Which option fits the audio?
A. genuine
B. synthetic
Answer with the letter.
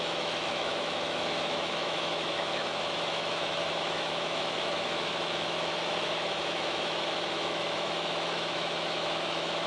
B